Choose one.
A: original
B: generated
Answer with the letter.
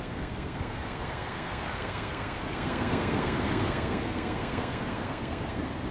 B